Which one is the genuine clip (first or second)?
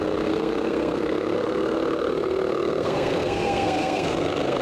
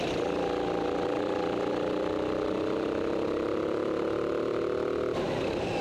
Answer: second